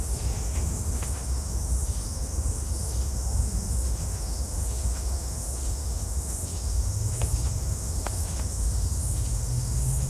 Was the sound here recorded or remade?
remade